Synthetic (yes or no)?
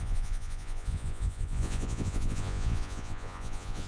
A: yes